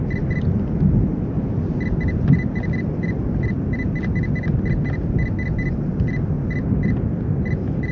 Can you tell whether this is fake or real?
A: real